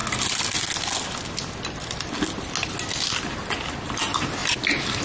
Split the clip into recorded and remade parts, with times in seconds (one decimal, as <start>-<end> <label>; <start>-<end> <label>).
0.0-5.0 recorded